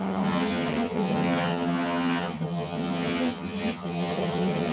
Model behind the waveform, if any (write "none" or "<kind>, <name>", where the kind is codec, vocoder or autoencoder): vocoder, HiFi-GAN